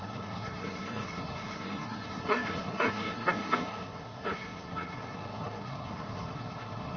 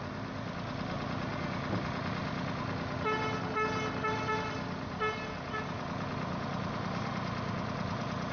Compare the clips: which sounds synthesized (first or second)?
first